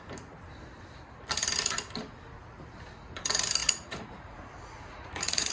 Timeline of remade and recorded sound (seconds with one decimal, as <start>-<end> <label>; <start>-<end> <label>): 0.0-3.6 recorded; 3.6-5.5 remade